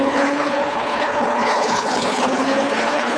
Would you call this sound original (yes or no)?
no